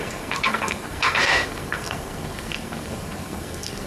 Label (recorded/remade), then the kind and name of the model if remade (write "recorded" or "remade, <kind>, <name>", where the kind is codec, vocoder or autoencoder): remade, codec, SNAC